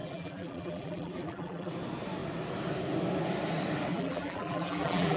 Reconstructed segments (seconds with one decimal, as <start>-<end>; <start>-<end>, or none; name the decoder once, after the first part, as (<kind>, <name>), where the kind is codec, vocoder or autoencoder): 0.0-1.7 (vocoder, BigVGAN v2); 3.9-5.2